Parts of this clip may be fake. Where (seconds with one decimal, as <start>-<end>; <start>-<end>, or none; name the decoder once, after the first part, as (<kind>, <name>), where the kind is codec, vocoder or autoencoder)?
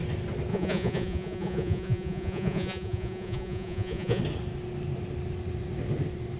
0.5-4.2 (vocoder, Vocos)